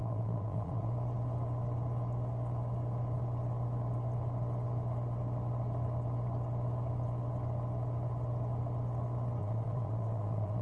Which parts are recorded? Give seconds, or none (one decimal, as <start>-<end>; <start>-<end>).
0.9-9.4